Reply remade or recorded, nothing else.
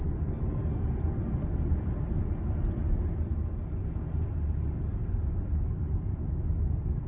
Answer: recorded